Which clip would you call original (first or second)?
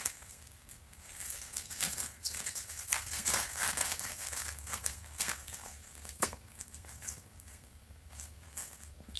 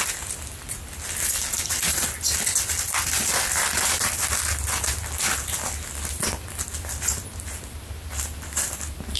second